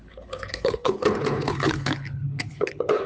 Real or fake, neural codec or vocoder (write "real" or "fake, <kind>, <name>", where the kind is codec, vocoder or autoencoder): fake, codec, HILCodec